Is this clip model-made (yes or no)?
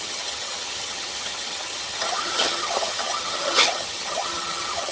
yes